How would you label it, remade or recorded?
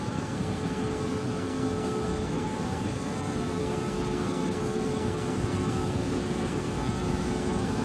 remade